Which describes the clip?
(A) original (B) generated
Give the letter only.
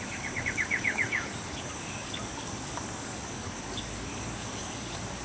B